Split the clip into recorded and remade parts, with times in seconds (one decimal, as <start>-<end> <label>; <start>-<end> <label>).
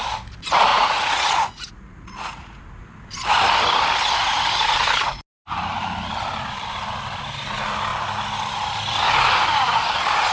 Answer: 0.0-0.7 recorded; 0.7-2.6 remade; 2.6-10.3 recorded